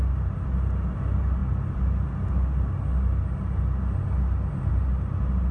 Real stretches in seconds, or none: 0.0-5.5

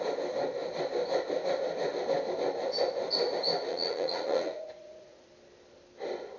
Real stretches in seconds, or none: 0.0-3.7; 5.3-6.4

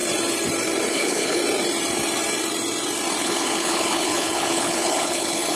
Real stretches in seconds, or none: 0.0-0.9; 1.4-3.2

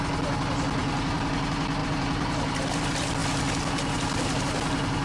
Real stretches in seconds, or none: 0.0-0.8; 1.3-1.8; 2.8-5.0